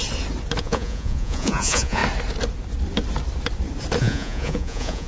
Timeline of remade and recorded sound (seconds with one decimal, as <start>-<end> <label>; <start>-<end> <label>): 0.0-0.6 recorded; 0.6-2.0 remade; 2.0-4.0 recorded; 4.0-5.1 remade